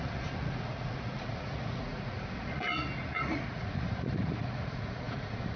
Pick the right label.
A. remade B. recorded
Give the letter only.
A